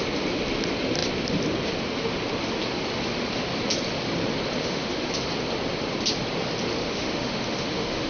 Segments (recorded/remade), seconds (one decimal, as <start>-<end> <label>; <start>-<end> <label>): 0.0-4.6 recorded; 4.6-5.1 remade; 5.1-6.8 recorded; 6.8-8.1 remade